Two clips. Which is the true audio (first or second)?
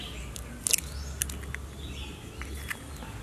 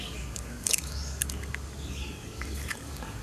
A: first